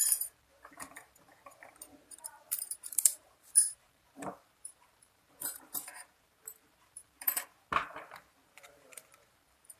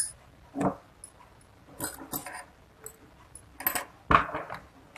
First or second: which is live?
second